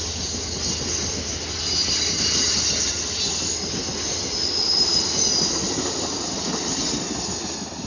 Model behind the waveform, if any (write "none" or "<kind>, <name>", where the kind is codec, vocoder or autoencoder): none